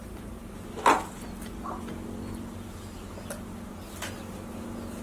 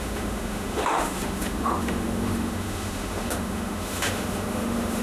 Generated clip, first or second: second